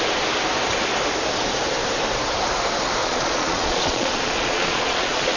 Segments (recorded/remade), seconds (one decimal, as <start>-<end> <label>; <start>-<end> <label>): 0.0-3.0 recorded; 3.0-5.4 remade